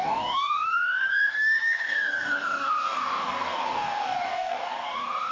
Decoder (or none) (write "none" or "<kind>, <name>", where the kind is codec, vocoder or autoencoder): codec, DAC